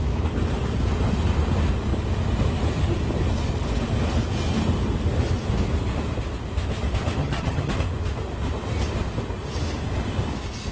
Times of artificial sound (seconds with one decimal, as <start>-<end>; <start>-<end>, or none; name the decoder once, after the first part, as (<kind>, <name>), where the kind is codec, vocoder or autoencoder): 7.2-7.7 (vocoder, HiFi-GAN)